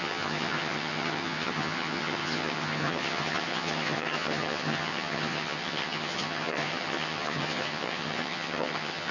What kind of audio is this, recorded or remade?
remade